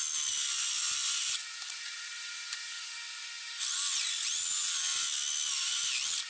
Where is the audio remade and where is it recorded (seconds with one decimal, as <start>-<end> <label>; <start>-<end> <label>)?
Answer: 0.0-6.3 recorded